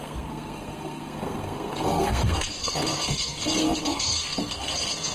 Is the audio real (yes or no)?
no